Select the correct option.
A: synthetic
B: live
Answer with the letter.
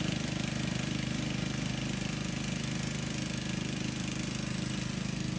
B